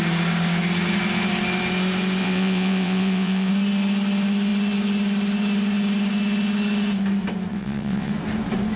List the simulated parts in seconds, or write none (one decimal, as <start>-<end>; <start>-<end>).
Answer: 2.2-3.5; 7.5-8.1